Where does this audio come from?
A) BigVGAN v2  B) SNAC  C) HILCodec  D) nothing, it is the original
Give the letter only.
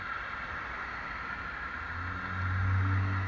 D